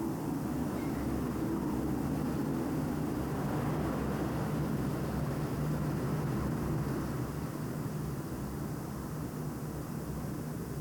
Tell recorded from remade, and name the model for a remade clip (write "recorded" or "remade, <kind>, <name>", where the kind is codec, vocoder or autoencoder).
recorded